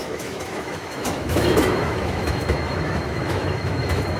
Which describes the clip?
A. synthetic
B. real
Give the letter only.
A